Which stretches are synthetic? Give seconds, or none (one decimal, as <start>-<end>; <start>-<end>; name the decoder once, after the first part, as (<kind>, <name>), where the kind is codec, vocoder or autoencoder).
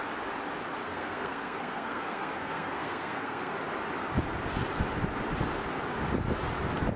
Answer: 0.8-3.5 (codec, SNAC)